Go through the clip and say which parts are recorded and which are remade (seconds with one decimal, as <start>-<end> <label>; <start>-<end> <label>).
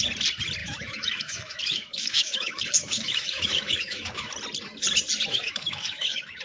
0.0-0.6 recorded; 0.6-4.3 remade; 4.3-5.3 recorded; 5.3-6.4 remade